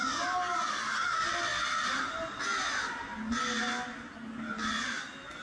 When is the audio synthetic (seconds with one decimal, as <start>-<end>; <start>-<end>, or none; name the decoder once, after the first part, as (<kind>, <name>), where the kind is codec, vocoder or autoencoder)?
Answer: none